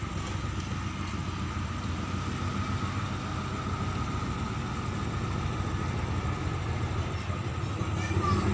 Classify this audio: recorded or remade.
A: recorded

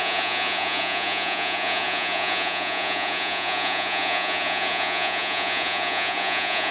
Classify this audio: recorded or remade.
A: remade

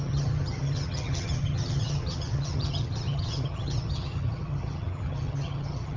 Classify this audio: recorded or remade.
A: remade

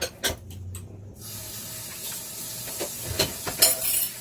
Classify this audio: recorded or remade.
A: recorded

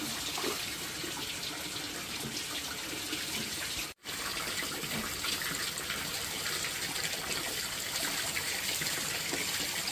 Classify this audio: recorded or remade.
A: recorded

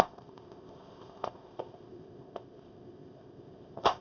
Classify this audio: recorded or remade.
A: remade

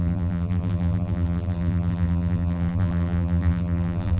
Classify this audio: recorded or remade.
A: remade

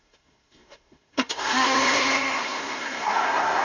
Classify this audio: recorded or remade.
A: remade